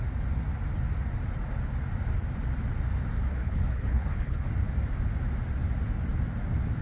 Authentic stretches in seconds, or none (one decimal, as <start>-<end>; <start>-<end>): 0.0-3.3; 4.5-6.8

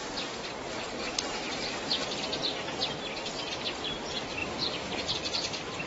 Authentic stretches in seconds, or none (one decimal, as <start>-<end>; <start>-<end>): 2.0-3.7